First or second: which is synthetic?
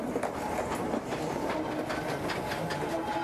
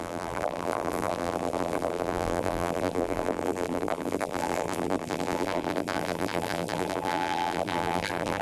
second